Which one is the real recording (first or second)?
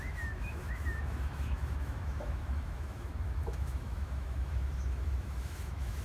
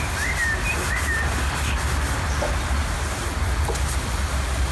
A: second